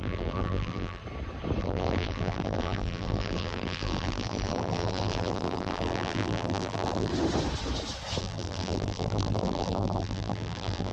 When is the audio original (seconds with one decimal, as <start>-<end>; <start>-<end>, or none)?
1.0-1.6; 7.1-8.2